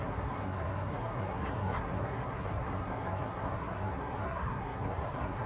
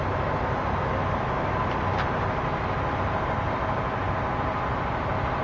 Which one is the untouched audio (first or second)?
second